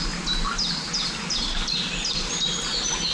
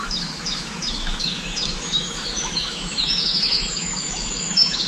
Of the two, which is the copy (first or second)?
second